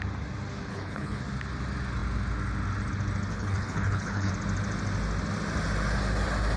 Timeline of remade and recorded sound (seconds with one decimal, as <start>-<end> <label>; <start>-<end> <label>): 0.0-0.7 recorded; 0.7-1.2 remade; 1.2-3.3 recorded; 3.3-4.3 remade; 4.3-6.6 recorded

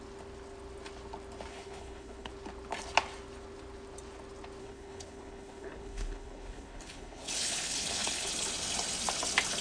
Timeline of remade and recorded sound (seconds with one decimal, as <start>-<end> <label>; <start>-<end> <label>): 0.0-1.5 recorded; 1.5-2.3 remade; 2.3-4.6 recorded; 4.6-8.3 remade; 8.3-9.6 recorded

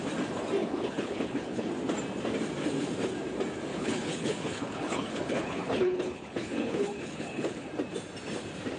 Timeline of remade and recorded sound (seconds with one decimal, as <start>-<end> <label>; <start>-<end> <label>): 0.0-0.6 recorded; 0.6-1.7 remade; 1.7-3.7 recorded; 3.7-7.7 remade; 7.7-8.8 recorded